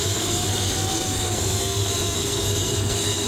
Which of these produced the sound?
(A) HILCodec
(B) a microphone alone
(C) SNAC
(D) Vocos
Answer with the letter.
C